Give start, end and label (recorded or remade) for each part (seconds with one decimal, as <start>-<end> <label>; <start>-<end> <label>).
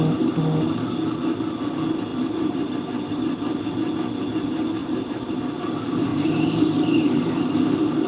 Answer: 0.0-2.1 recorded; 2.1-2.7 remade; 2.7-4.8 recorded; 4.8-5.3 remade; 5.3-6.1 recorded; 6.1-8.1 remade